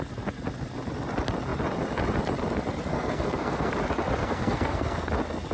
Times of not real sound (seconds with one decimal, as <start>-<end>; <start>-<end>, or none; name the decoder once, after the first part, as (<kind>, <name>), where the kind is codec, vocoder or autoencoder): 2.9-3.7 (codec, SNAC); 4.2-5.1